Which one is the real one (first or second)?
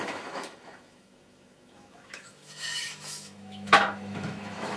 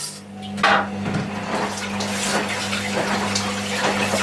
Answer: second